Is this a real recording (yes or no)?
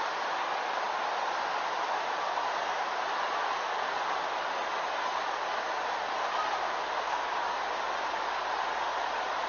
yes